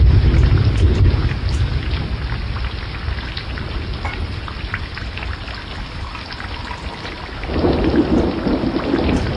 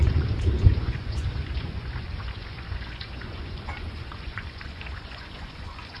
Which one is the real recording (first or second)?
first